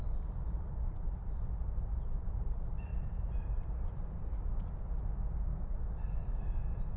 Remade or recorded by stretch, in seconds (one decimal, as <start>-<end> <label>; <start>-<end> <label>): 0.0-5.5 recorded; 5.5-6.6 remade; 6.6-7.0 recorded